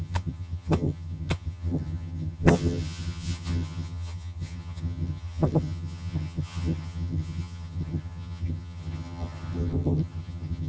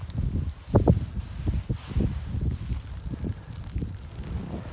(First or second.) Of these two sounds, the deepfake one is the first